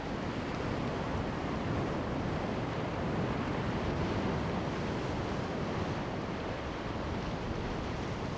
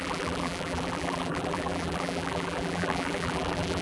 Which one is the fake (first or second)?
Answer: second